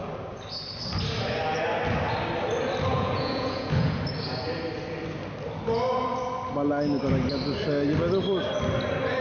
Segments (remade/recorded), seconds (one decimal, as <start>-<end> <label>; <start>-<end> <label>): 0.0-2.9 recorded; 2.9-4.0 remade; 4.0-9.2 recorded

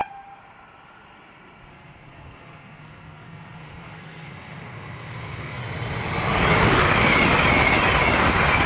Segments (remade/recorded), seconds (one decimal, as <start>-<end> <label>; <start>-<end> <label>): 0.0-1.7 recorded; 1.7-5.6 remade; 5.6-8.7 recorded

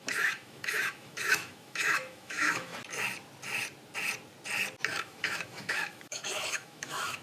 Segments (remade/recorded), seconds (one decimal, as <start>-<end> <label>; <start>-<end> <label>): 0.0-2.7 remade; 2.7-5.0 recorded; 5.0-7.2 remade

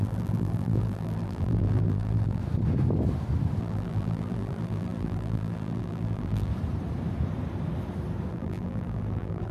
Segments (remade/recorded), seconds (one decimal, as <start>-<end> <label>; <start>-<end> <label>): 0.0-2.4 remade; 2.4-3.6 recorded; 3.6-6.5 remade; 6.5-8.3 recorded; 8.3-9.5 remade

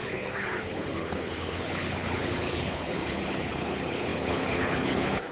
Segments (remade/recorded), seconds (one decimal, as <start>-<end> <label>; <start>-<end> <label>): 0.0-5.3 remade

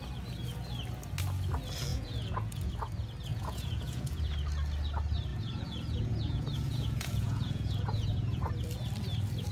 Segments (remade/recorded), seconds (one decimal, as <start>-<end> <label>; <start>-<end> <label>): 0.0-1.9 recorded; 1.9-2.7 remade; 2.7-3.3 recorded; 3.3-4.2 remade; 4.2-5.3 recorded; 5.3-8.5 remade; 8.5-9.5 recorded

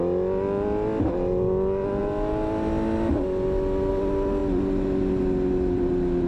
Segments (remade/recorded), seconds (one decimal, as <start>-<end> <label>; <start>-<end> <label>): 0.0-6.3 recorded

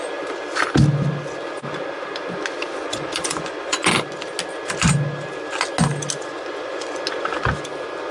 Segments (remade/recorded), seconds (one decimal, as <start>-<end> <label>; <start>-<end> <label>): 0.0-2.7 recorded; 2.7-3.9 remade; 3.9-6.2 recorded; 6.2-7.0 remade; 7.0-8.1 recorded